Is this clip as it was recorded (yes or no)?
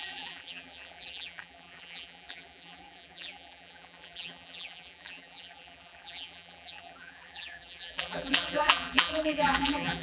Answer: no